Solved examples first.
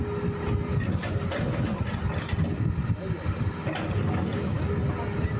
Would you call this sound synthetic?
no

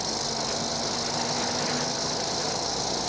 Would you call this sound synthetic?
no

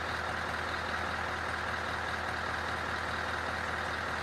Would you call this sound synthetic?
no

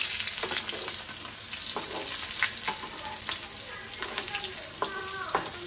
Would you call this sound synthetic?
no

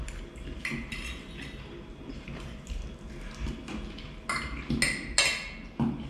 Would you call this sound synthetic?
no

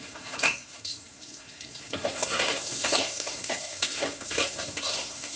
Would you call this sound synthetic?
yes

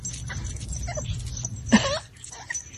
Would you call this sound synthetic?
no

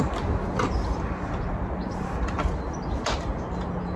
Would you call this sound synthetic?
no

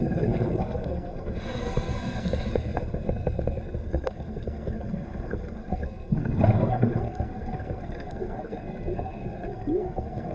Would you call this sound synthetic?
yes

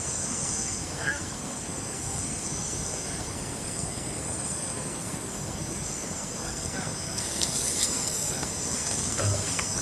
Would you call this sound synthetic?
yes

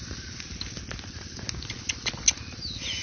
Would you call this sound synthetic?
no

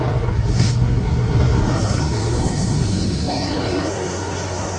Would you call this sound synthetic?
yes